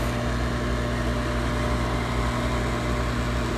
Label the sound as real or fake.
real